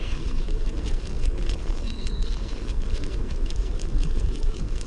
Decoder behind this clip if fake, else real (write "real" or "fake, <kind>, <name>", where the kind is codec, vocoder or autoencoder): fake, codec, SNAC